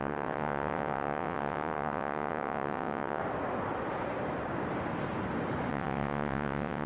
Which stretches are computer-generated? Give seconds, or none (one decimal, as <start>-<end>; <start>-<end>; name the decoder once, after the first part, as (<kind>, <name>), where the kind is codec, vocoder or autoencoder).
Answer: 0.0-3.2 (vocoder, WaveNeXt); 5.7-6.9